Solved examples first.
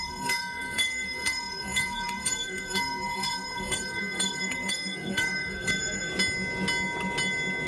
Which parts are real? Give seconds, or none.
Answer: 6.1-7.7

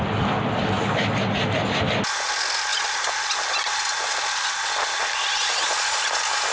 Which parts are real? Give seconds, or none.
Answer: 0.0-6.5